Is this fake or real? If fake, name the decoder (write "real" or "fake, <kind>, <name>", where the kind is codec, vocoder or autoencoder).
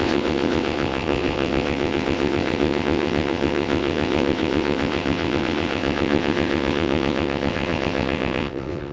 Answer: fake, vocoder, WaveNeXt